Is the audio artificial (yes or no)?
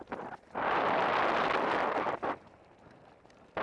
no